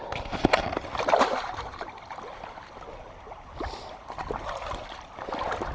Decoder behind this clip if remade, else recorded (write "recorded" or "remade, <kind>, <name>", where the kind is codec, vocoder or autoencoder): recorded